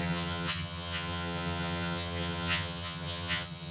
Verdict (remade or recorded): remade